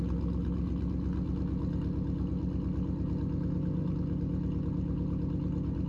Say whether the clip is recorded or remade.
recorded